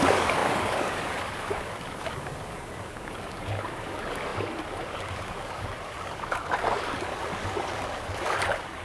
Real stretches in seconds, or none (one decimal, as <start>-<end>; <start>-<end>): none